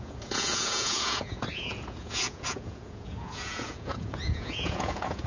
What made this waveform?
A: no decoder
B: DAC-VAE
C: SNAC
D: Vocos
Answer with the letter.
D